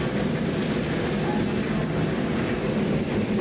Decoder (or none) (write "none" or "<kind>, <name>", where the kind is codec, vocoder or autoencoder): none